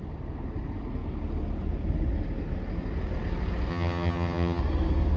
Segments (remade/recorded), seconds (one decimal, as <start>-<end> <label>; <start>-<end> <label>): 0.0-3.7 recorded; 3.7-4.6 remade; 4.6-5.2 recorded